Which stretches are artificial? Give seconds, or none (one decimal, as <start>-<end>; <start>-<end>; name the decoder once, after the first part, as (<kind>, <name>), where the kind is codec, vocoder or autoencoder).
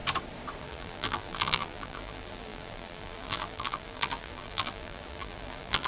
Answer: 0.6-5.9 (vocoder, BigVGAN v2)